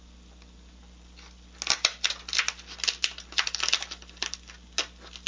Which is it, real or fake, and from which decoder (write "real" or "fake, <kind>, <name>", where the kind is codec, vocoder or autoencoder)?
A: real